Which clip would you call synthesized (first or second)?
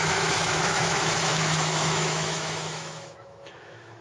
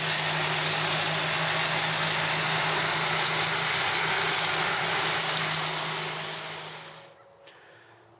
first